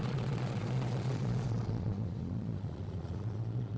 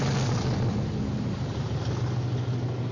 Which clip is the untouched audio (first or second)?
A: second